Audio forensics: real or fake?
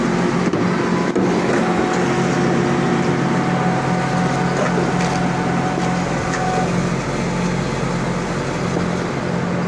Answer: real